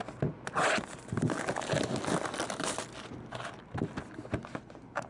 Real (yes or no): yes